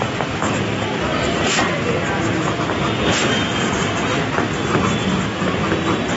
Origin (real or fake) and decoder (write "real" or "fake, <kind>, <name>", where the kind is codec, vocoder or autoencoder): real